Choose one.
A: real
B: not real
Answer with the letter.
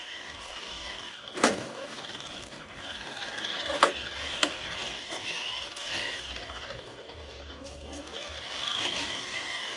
B